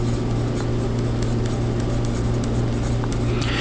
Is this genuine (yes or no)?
yes